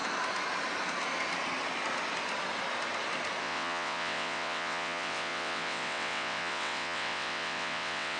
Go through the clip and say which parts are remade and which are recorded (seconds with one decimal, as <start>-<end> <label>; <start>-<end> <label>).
0.0-3.4 recorded; 3.4-8.2 remade